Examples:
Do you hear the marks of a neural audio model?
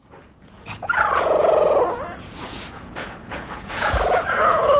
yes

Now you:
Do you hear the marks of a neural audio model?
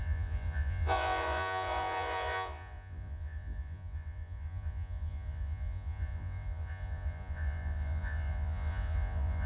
yes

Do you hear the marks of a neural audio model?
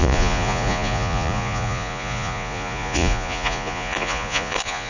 yes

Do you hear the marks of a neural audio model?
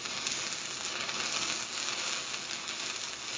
no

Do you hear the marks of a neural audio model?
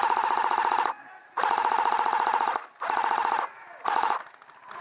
no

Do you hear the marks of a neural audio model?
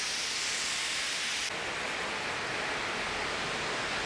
no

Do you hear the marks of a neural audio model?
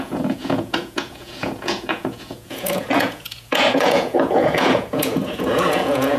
yes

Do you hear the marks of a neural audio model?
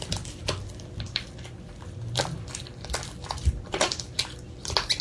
no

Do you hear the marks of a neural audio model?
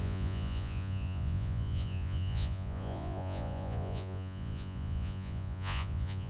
yes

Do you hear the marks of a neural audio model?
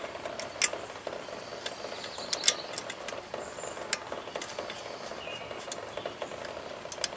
no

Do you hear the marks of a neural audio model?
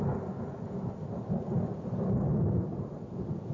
no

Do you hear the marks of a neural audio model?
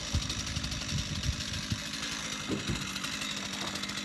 no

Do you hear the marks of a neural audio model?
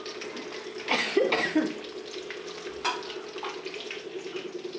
no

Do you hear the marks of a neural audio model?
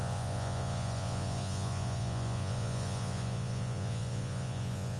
yes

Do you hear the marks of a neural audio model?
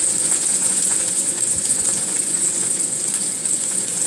yes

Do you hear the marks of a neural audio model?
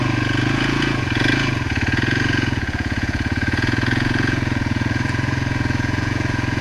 yes